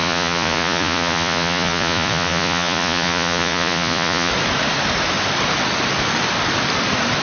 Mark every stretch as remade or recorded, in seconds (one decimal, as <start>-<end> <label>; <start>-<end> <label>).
0.0-4.3 remade; 4.3-7.2 recorded

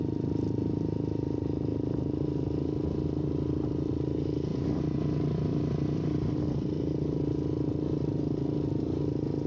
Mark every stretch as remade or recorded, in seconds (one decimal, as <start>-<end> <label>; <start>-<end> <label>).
0.0-4.5 recorded; 4.5-7.3 remade; 7.3-9.5 recorded

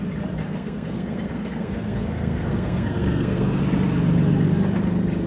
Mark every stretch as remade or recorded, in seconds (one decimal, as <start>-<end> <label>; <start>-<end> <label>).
0.0-0.4 recorded; 0.4-3.6 remade; 3.6-5.3 recorded

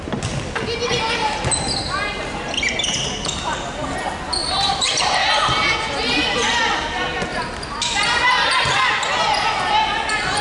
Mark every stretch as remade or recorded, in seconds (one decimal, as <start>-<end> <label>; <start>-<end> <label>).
0.0-4.4 recorded; 4.4-5.4 remade; 5.4-7.3 recorded; 7.3-8.9 remade; 8.9-10.4 recorded